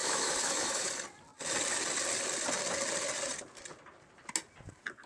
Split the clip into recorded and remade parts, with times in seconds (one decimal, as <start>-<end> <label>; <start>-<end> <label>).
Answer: 0.0-0.9 remade; 0.9-5.1 recorded

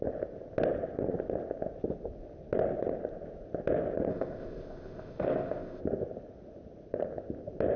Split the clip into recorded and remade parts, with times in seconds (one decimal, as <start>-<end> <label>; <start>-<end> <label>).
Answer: 0.0-4.1 recorded; 4.1-5.8 remade; 5.8-7.8 recorded

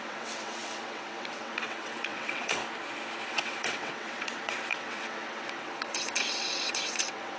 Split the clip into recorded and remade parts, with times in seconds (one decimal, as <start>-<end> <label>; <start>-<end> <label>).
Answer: 0.0-2.6 remade; 2.6-3.3 recorded; 3.3-7.4 remade

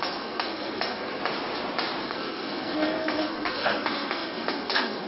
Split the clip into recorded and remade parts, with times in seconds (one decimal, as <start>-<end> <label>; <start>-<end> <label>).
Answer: 0.0-1.2 remade; 1.2-2.0 recorded; 2.0-5.1 remade

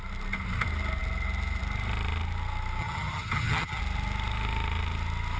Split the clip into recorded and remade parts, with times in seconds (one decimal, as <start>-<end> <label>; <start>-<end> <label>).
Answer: 0.0-2.8 recorded; 2.8-3.8 remade; 3.8-5.4 recorded

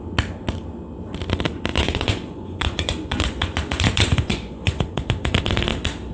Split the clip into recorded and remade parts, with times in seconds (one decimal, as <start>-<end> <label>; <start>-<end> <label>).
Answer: 0.0-1.7 recorded; 1.7-5.4 remade; 5.4-6.1 recorded

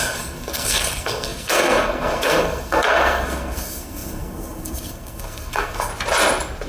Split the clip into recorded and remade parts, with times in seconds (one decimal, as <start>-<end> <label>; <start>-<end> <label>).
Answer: 0.0-5.9 remade; 5.9-6.7 recorded

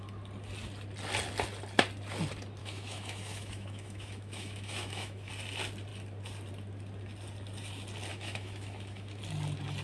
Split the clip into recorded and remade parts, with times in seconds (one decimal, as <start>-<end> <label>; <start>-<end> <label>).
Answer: 0.0-2.6 recorded; 2.6-5.3 remade; 5.3-8.1 recorded; 8.1-9.2 remade; 9.2-9.8 recorded